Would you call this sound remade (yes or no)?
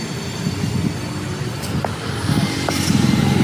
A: no